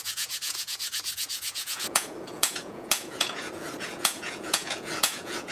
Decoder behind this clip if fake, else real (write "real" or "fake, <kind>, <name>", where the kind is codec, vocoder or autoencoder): fake, vocoder, Vocos